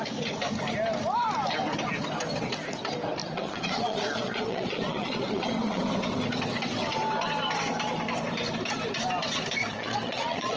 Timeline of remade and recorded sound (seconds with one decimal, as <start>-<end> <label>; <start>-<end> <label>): 0.0-3.2 recorded; 3.2-5.8 remade; 5.8-9.6 recorded; 9.6-10.6 remade